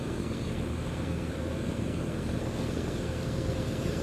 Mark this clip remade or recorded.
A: remade